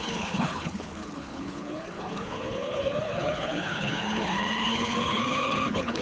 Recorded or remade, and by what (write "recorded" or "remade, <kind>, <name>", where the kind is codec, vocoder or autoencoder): remade, codec, HILCodec